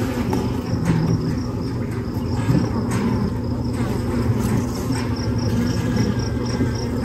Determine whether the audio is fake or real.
real